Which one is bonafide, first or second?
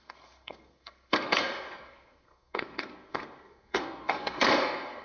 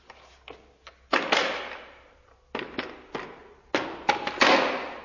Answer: second